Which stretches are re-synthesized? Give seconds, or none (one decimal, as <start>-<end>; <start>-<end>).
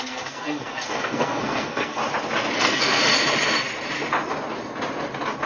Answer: 0.0-2.0; 2.6-3.0